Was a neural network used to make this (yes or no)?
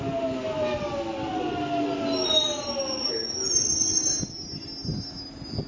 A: no